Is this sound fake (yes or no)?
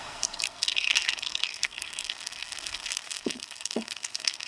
yes